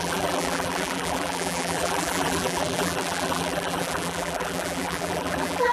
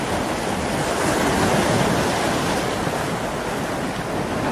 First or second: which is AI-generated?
first